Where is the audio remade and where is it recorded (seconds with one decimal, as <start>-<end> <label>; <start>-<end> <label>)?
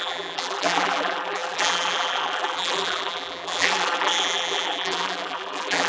0.0-5.9 remade